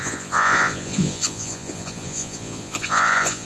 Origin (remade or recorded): remade